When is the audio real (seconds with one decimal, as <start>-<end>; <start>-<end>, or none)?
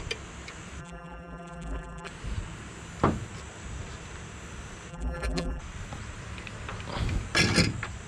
0.0-0.8; 2.1-4.9; 5.6-8.1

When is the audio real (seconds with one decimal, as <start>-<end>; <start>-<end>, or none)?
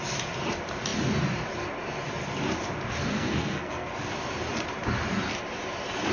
0.0-3.1; 3.9-6.1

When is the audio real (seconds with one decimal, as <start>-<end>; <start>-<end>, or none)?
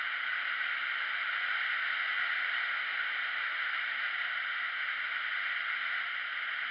0.0-6.7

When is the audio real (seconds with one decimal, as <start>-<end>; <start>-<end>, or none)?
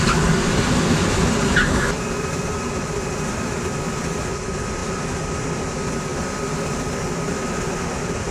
0.0-8.3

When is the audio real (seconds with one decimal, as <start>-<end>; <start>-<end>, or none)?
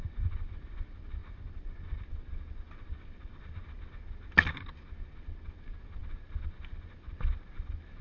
0.0-8.0